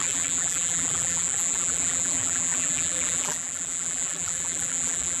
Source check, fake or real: fake